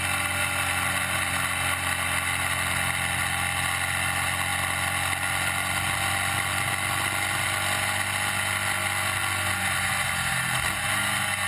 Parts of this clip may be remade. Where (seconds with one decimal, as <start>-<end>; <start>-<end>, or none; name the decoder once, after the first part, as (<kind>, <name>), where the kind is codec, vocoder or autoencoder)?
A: none